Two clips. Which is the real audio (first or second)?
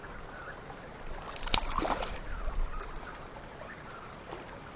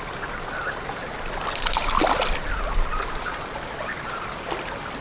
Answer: second